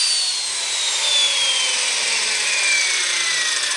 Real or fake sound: real